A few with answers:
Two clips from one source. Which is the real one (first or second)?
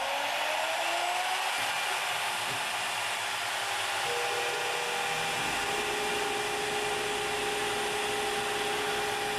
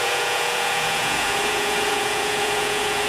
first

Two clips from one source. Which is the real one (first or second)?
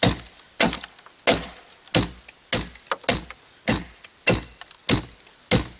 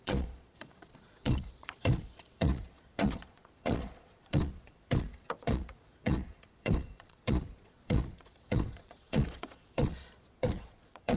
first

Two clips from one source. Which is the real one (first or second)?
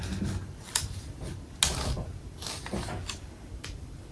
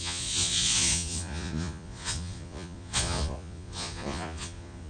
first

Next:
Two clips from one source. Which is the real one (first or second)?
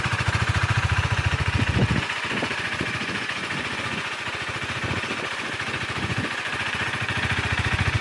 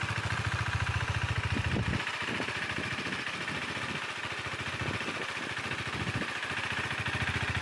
second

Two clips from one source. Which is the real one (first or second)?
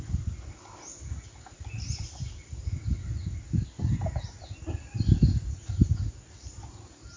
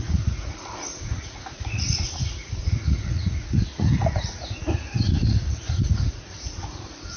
first